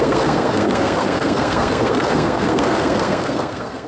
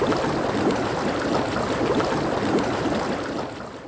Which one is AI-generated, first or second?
first